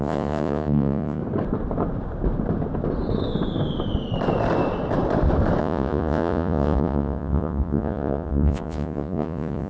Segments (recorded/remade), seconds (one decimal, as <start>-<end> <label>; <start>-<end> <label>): 0.0-1.2 remade; 1.2-5.6 recorded; 5.6-9.7 remade